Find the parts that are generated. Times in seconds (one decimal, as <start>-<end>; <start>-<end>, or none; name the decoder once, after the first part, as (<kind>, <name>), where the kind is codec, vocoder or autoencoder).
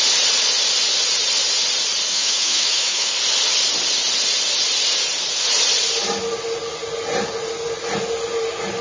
2.1-3.1 (autoencoder, DAC-VAE)